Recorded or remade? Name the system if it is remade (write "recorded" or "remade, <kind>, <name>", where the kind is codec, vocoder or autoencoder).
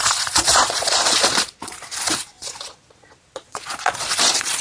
remade, vocoder, Vocos